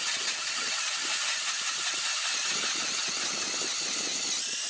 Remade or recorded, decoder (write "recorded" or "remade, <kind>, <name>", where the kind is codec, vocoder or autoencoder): recorded